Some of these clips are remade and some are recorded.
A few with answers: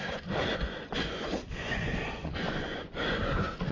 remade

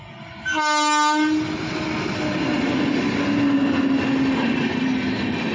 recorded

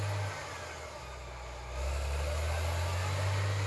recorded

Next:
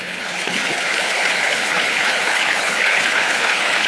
remade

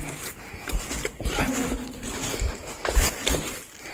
recorded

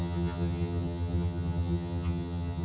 remade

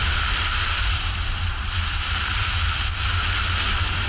remade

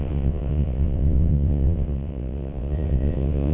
remade